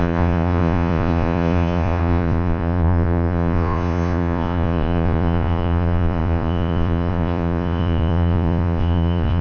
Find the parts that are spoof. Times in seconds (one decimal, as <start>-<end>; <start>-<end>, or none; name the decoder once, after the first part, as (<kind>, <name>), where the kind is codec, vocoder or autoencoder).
0.0-9.4 (vocoder, Vocos)